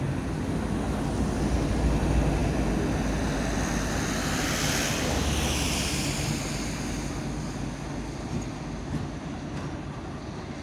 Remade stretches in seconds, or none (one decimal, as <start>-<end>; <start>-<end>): 8.8-10.1